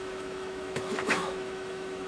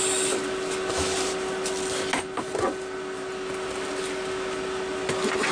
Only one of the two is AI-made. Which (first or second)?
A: first